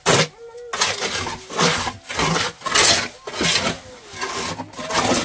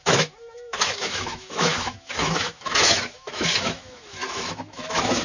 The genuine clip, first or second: first